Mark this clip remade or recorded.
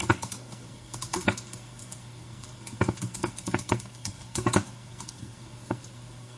remade